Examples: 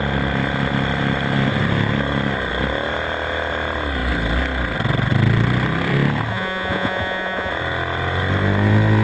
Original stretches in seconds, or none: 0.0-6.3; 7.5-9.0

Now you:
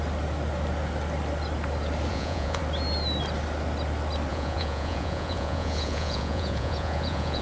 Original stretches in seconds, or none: 0.0-2.1; 2.6-4.3